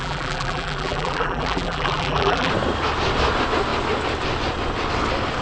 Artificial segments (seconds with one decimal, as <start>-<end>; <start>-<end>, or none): 0.0-2.5